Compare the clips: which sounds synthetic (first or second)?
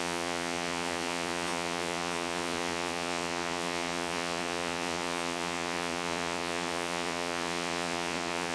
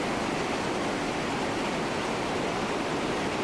first